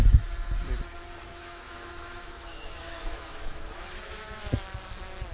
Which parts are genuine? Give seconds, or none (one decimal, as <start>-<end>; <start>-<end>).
0.0-1.3; 4.5-5.3